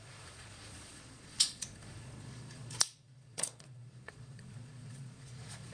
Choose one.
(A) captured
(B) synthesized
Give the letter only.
B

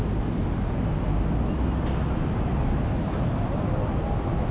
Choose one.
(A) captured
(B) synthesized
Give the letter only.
A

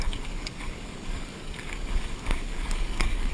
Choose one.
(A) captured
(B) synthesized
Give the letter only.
B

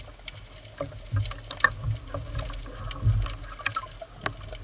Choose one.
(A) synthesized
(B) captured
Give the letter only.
B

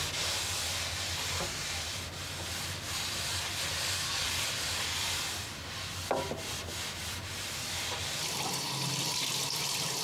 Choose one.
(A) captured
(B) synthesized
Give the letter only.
A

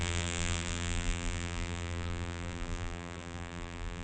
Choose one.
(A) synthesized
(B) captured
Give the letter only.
A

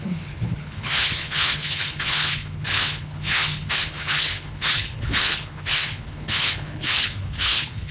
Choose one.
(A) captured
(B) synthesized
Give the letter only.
B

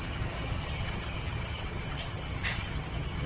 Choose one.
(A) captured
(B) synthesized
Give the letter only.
B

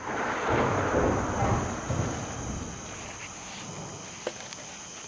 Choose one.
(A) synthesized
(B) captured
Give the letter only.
B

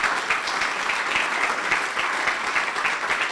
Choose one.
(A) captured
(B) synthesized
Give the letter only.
A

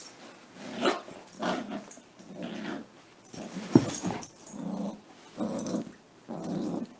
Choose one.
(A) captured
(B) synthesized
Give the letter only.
B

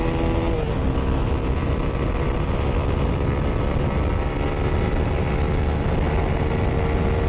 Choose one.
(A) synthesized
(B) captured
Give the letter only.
B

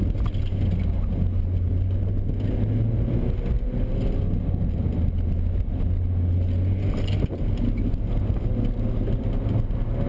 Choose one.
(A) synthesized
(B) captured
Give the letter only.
B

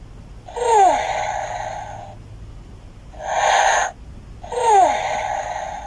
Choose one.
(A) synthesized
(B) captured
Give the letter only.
B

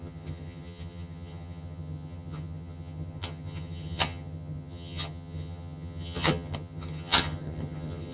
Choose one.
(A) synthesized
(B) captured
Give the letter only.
A